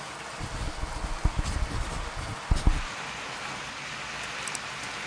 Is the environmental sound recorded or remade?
recorded